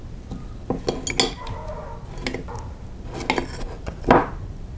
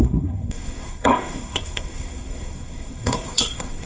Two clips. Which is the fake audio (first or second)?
second